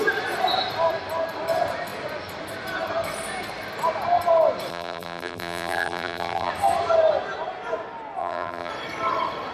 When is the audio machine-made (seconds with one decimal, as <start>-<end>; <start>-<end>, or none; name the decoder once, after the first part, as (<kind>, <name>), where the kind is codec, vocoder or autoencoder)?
4.7-6.5 (vocoder, BigVGAN v2); 8.2-8.7